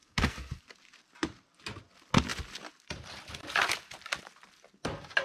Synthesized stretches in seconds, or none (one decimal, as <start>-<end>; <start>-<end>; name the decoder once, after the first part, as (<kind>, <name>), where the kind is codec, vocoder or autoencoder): 0.0-0.6 (codec, SNAC)